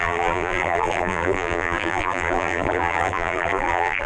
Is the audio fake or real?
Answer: fake